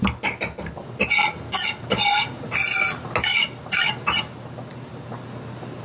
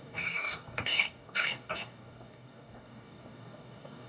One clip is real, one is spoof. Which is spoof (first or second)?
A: second